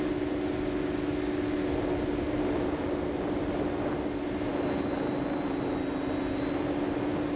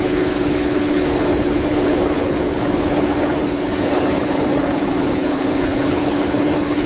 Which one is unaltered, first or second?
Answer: first